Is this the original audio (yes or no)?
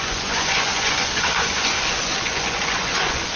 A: no